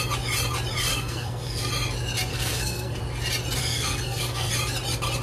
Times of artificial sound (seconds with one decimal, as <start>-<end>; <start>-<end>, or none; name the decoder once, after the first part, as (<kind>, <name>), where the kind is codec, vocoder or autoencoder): 0.9-1.7 (codec, SNAC); 2.3-3.0; 3.6-4.5